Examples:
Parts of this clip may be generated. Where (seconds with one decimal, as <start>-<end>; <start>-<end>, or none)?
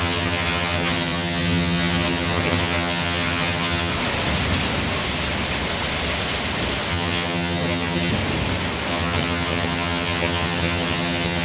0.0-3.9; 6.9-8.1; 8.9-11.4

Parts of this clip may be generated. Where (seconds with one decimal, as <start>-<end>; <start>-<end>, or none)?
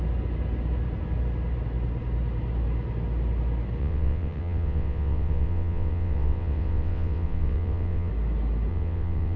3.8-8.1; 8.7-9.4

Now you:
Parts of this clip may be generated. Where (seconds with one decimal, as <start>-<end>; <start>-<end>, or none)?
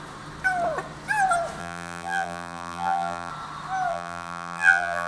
1.6-3.3; 3.9-5.1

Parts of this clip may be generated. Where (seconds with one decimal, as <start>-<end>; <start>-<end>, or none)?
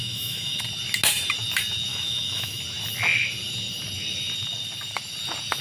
0.0-0.6; 1.9-2.6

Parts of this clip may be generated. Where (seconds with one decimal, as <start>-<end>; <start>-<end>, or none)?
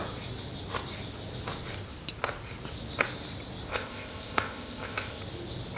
3.7-5.2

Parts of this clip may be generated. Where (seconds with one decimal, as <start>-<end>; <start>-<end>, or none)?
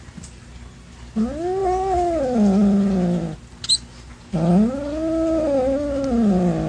none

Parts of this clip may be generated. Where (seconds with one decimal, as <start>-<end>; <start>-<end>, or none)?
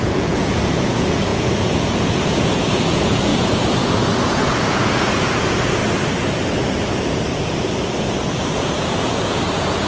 0.0-5.8; 8.0-9.9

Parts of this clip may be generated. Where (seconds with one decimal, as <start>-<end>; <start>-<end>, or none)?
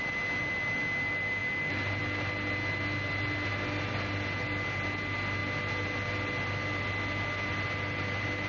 none